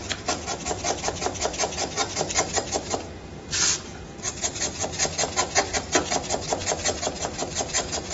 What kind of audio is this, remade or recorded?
recorded